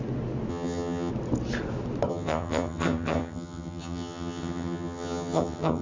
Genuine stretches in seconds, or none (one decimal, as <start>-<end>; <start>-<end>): 0.0-0.5; 1.1-2.1